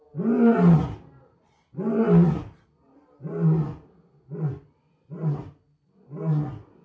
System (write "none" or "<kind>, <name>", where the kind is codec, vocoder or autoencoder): none